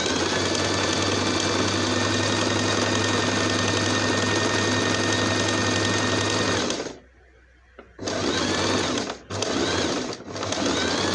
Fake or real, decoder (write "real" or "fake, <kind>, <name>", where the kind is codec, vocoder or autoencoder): real